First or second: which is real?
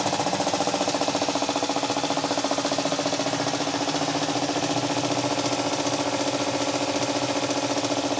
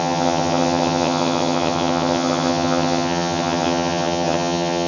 first